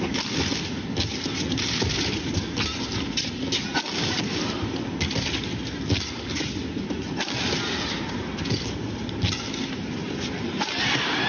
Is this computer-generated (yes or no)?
no